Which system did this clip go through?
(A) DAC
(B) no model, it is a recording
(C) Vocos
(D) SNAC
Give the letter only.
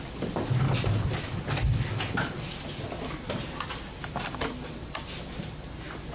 B